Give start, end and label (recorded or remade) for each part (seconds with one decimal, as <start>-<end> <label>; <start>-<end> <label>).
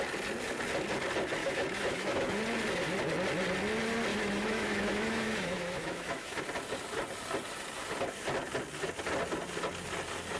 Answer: 0.0-1.4 recorded; 1.4-2.4 remade; 2.4-4.1 recorded; 4.1-6.4 remade; 6.4-10.4 recorded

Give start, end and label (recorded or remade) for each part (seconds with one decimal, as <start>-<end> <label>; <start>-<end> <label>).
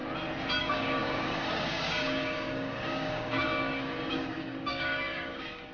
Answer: 0.0-0.6 recorded; 0.6-5.7 remade